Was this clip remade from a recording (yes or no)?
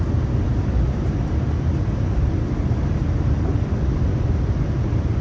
no